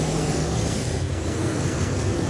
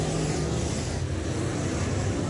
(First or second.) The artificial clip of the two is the first